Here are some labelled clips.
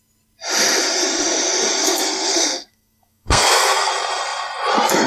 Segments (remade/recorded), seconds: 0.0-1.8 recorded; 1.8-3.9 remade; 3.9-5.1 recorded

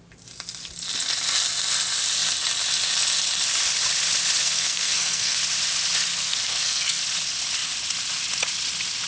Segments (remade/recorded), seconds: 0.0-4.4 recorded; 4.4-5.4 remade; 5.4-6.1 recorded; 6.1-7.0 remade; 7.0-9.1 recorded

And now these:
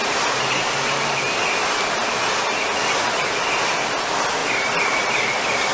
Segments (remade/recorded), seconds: 0.0-5.7 recorded

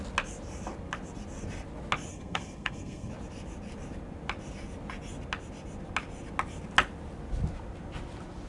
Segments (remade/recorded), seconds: 0.0-2.1 recorded; 2.1-3.1 remade; 3.1-8.5 recorded

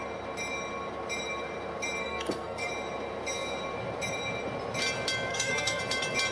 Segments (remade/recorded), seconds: 0.0-2.0 recorded; 2.0-2.7 remade; 2.7-5.3 recorded; 5.3-5.8 remade; 5.8-6.3 recorded

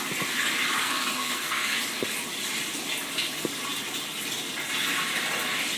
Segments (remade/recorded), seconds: 0.0-0.8 recorded; 0.8-1.8 remade; 1.8-5.8 recorded